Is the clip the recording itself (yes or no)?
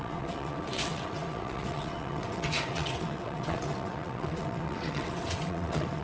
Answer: no